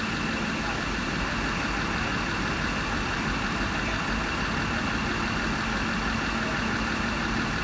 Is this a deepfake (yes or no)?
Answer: no